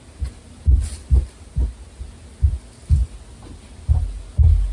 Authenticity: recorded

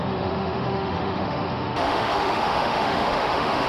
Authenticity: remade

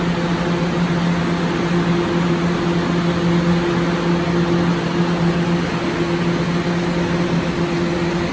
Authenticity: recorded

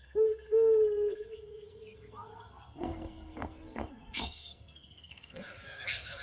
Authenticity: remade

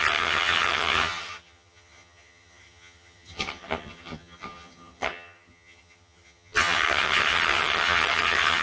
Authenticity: remade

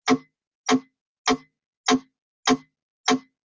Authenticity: recorded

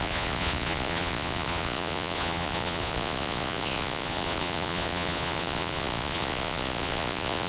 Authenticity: remade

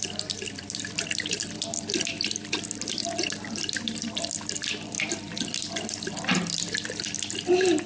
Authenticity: remade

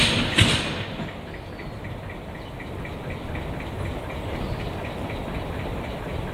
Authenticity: recorded